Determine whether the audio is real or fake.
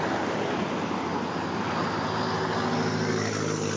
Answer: real